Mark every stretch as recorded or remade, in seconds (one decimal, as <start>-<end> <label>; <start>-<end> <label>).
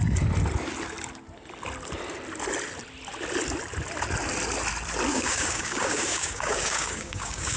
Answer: 0.0-5.1 recorded; 5.1-7.6 remade